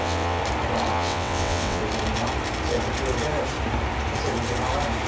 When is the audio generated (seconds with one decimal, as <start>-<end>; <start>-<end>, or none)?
0.0-0.4; 0.9-1.8